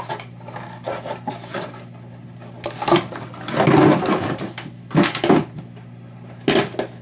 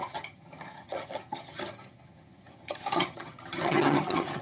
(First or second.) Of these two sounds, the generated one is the second